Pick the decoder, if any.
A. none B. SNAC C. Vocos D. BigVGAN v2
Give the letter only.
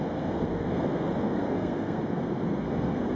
B